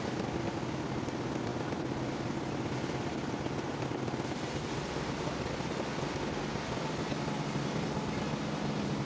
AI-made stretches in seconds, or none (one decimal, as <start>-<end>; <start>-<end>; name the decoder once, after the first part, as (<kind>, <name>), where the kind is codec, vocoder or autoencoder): none